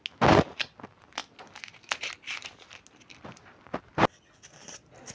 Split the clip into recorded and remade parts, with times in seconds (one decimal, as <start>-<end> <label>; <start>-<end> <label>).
0.0-5.1 recorded